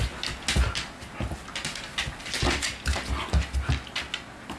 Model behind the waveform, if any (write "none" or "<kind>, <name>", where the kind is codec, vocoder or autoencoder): none